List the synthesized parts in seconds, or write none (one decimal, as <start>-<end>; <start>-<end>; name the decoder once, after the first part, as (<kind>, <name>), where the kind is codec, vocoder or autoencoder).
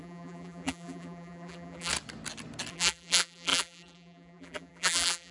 0.0-1.9 (vocoder, BigVGAN v2); 2.7-5.3